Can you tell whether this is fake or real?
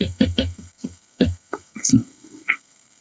fake